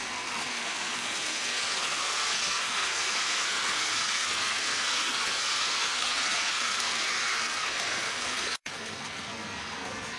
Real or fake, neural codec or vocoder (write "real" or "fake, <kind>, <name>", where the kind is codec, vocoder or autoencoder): fake, codec, SNAC